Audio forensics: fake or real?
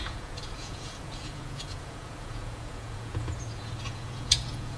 fake